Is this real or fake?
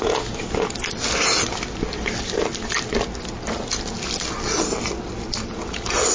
real